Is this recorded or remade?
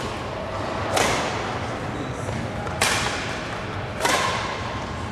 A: remade